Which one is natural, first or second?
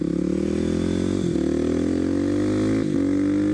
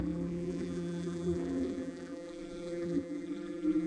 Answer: first